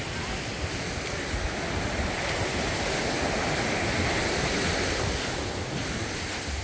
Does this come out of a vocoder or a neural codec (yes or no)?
no